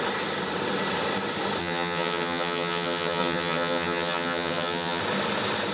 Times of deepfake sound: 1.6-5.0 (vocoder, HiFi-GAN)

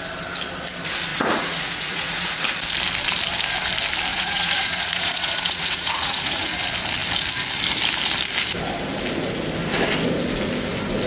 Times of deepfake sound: 1.1-2.4 (vocoder, Vocos); 4.1-6.5

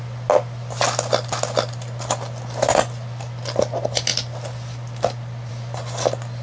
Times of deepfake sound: none

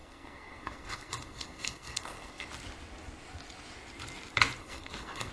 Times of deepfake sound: 0.0-2.5 (codec, SNAC); 4.6-5.3

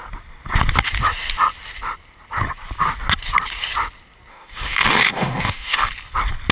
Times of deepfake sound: 4.3-5.9 (autoencoder, DAC-VAE)

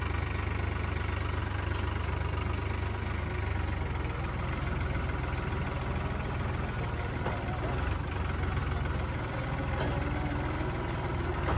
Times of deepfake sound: none

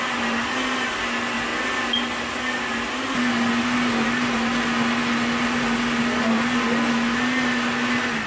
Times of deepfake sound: none